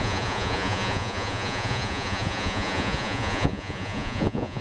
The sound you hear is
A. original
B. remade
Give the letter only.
B